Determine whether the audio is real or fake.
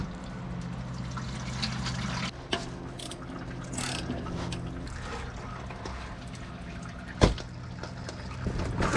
real